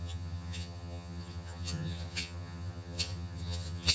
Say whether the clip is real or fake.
fake